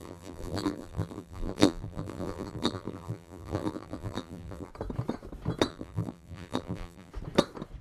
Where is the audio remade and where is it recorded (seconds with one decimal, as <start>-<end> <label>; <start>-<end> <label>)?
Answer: 0.0-4.7 remade; 4.7-5.7 recorded; 5.7-7.1 remade; 7.1-7.8 recorded